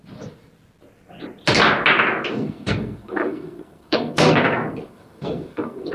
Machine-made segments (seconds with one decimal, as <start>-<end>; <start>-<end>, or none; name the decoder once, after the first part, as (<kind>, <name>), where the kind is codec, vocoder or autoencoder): 2.3-5.9 (codec, SNAC)